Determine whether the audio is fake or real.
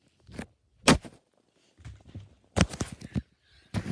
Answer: real